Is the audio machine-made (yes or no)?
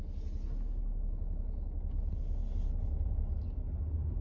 no